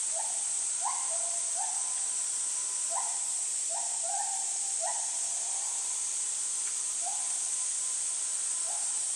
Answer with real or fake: fake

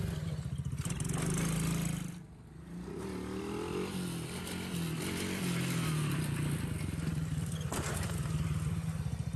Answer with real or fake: real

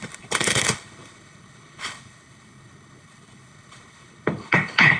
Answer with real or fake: fake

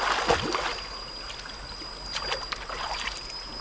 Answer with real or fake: real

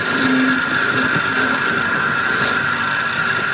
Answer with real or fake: real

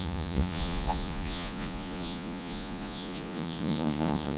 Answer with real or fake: fake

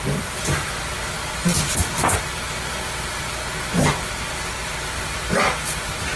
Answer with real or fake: real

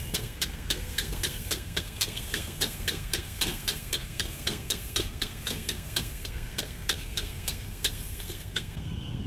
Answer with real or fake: fake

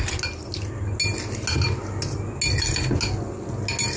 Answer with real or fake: real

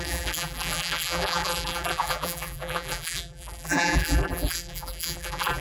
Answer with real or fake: fake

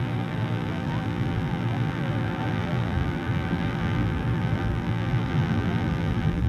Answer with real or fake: fake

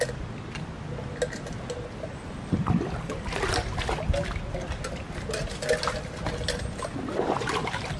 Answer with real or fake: real